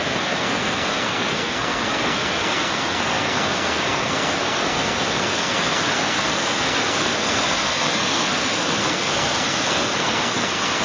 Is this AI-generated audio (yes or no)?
yes